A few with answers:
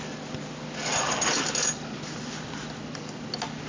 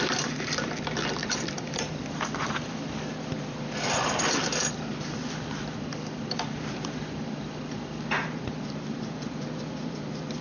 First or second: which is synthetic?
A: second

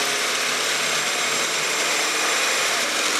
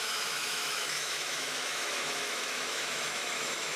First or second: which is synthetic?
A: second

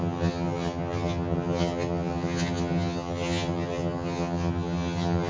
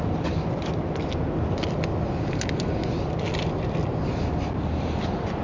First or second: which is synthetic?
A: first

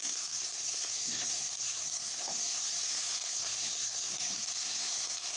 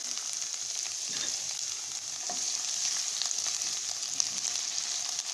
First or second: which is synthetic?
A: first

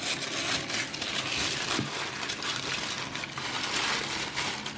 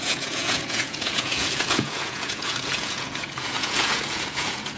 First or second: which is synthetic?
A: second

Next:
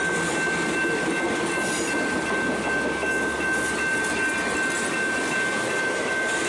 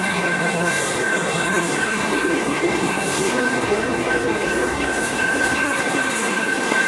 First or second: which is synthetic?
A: second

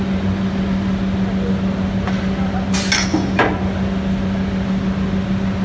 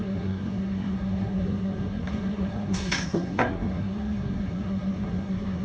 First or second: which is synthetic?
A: second